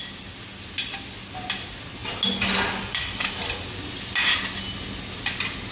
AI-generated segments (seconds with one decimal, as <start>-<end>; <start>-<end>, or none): none